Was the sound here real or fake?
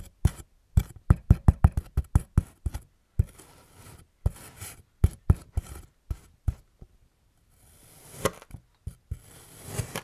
real